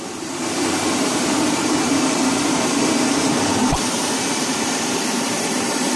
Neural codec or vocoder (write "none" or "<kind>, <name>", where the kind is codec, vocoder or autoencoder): vocoder, BigVGAN v2